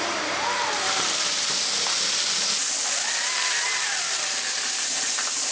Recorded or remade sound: recorded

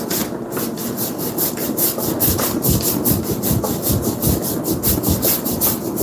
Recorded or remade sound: recorded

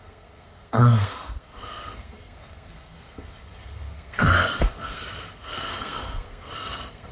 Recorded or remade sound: remade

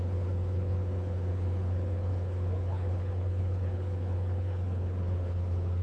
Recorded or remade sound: remade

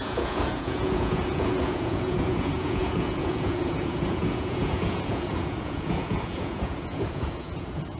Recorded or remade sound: remade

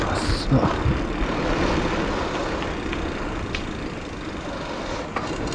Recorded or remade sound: recorded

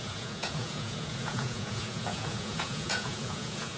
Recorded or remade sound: remade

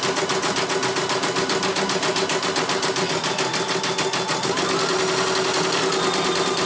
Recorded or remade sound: recorded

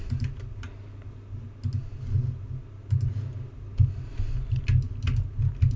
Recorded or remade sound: recorded